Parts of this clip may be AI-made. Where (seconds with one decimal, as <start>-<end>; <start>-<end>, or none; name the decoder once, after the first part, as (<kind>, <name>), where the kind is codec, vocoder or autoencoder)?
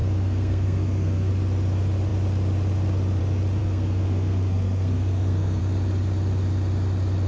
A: 0.0-1.3 (codec, SNAC); 3.6-5.6